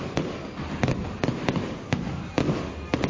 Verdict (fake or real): real